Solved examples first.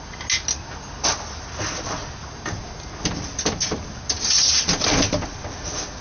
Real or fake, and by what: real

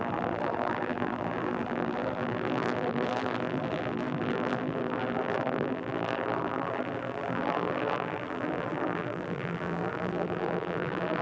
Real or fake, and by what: fake, vocoder, BigVGAN v2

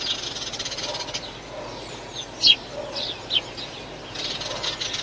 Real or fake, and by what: real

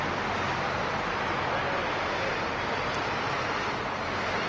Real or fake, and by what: real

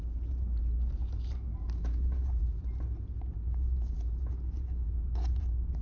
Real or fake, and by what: fake, vocoder, BigVGAN v2